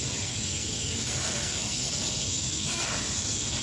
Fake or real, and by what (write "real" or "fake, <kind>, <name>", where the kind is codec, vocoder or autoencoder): fake, codec, SNAC